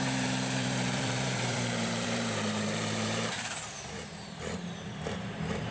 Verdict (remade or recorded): remade